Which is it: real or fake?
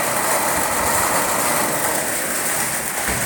real